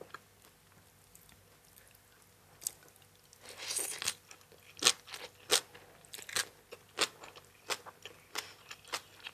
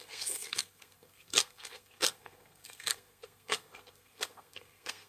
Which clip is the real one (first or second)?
first